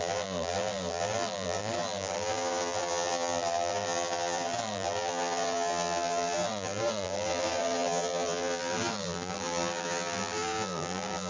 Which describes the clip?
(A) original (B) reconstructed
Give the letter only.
B